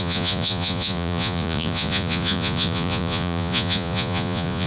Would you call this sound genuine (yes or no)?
no